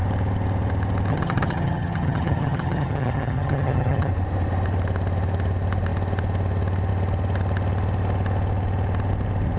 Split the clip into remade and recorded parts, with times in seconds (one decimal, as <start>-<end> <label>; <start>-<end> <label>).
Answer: 0.0-1.1 recorded; 1.1-4.1 remade; 4.1-9.6 recorded